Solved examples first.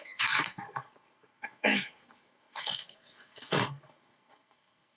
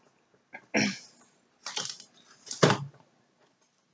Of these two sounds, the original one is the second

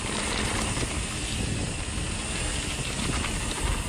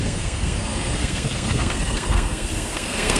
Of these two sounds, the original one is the first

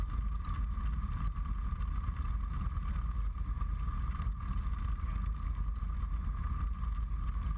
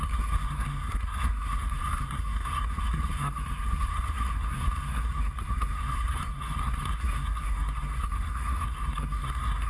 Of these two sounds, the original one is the first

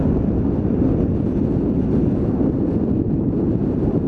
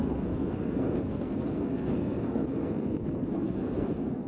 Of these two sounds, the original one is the first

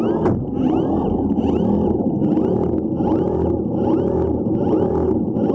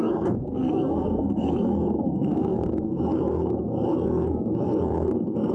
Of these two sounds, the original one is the first